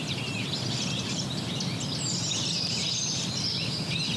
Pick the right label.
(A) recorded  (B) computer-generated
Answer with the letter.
B